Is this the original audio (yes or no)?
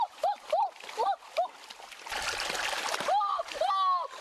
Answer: yes